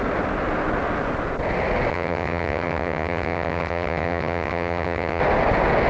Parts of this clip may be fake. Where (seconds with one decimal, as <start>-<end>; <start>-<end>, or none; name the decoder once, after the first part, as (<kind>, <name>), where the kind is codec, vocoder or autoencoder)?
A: 1.9-5.2 (vocoder, HiFi-GAN)

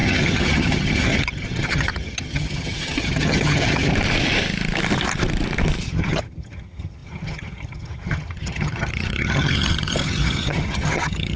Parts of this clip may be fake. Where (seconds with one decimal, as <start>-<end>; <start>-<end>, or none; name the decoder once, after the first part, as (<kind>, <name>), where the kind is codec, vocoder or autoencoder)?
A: 0.0-3.9 (vocoder, HiFi-GAN); 5.8-11.4

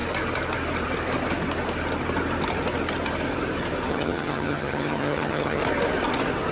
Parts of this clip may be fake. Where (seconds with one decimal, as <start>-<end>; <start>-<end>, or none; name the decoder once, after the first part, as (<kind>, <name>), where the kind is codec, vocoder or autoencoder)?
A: 3.9-5.6 (vocoder, HiFi-GAN)

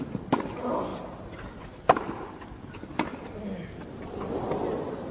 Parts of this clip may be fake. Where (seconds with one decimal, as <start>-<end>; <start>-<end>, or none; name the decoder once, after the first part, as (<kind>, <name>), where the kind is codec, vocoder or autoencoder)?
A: none